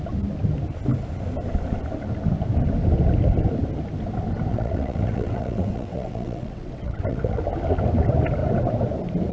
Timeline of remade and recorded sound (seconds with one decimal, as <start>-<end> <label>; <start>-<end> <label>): 0.0-4.5 recorded; 4.5-7.4 remade; 7.4-9.3 recorded